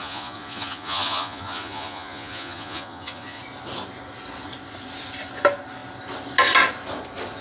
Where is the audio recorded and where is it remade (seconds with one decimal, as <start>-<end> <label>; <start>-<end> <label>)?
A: 0.0-3.4 remade; 3.4-7.4 recorded